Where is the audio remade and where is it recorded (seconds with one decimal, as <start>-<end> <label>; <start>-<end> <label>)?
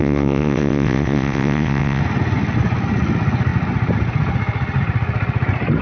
0.0-2.0 remade; 2.0-5.8 recorded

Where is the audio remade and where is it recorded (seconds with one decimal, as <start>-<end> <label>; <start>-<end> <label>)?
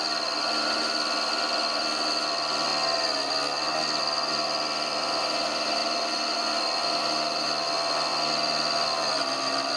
0.0-2.7 remade; 2.7-4.0 recorded; 4.0-8.1 remade; 8.1-9.1 recorded; 9.1-9.8 remade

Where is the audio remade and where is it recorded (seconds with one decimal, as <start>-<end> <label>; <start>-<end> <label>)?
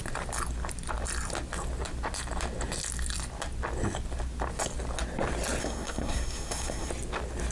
0.0-5.6 recorded; 5.6-6.9 remade; 6.9-7.5 recorded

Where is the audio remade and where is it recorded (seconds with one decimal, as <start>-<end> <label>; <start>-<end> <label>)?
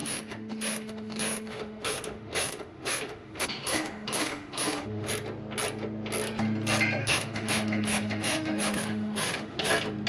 0.0-5.1 remade; 5.1-7.0 recorded; 7.0-9.7 remade; 9.7-10.1 recorded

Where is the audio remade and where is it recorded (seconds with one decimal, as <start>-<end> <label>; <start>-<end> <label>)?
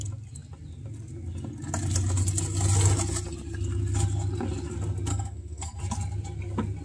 0.0-5.1 recorded; 5.1-5.8 remade; 5.8-6.8 recorded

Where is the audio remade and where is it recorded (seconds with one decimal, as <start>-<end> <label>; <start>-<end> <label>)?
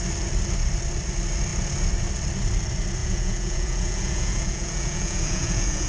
0.0-3.0 recorded; 3.0-5.9 remade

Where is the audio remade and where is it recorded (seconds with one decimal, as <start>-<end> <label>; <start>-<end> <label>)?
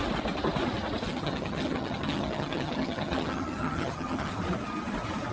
0.0-1.1 recorded; 1.1-4.3 remade; 4.3-5.3 recorded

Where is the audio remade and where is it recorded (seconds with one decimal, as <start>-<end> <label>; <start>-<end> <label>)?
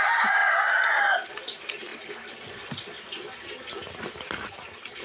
0.0-0.4 remade; 0.4-1.0 recorded; 1.0-5.0 remade